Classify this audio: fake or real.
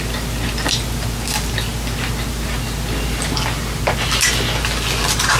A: real